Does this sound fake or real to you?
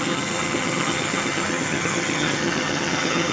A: fake